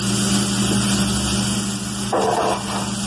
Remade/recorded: recorded